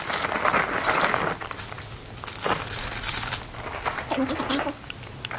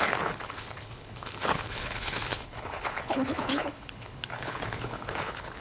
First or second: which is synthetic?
second